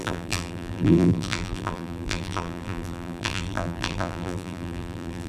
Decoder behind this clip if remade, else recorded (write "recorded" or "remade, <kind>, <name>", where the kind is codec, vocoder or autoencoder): remade, vocoder, BigVGAN v2